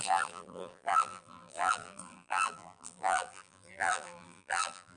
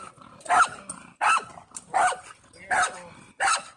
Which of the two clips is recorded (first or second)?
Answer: second